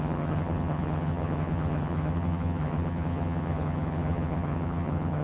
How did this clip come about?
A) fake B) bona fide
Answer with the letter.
A